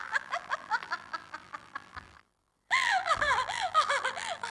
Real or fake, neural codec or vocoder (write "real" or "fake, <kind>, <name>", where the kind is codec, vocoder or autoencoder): fake, vocoder, BigVGAN v2